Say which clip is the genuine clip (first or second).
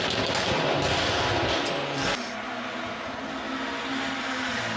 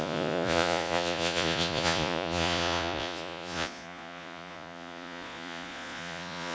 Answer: first